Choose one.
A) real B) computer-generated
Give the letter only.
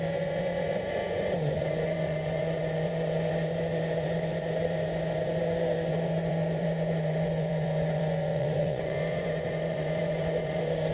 B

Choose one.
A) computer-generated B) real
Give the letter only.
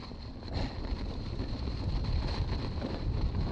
B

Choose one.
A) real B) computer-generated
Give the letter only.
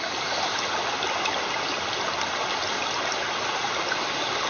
A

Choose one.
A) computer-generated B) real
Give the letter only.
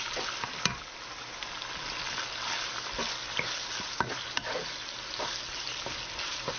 B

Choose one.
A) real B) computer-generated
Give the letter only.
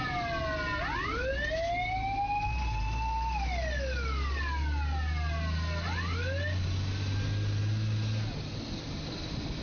A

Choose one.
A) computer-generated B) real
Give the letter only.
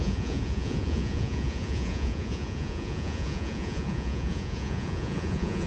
A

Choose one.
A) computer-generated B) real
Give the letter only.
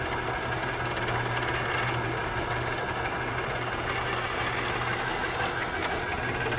B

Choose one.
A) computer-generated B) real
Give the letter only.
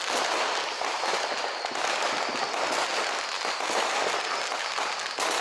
B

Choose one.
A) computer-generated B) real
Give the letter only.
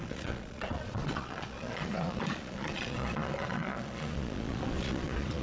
A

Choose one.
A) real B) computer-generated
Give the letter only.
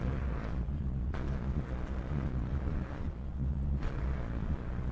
B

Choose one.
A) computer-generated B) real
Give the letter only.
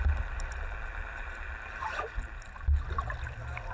B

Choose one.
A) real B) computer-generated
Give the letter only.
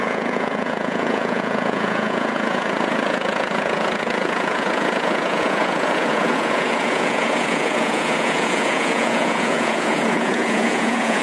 B